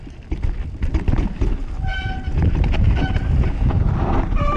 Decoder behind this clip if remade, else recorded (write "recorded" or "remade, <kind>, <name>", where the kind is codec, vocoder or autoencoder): recorded